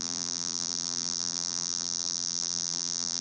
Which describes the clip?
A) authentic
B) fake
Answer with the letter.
B